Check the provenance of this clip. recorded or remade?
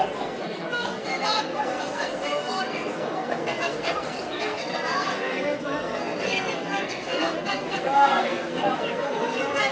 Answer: remade